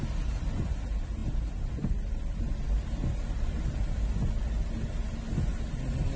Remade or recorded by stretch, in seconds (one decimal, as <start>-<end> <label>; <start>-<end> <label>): 0.0-6.2 recorded